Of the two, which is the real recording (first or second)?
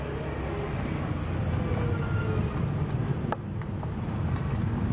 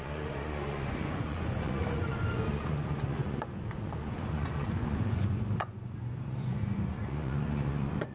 first